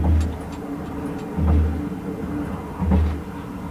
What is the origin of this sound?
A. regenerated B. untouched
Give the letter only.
B